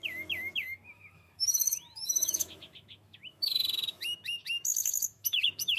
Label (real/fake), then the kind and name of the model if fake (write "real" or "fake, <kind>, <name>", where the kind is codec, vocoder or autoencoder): fake, autoencoder, DAC-VAE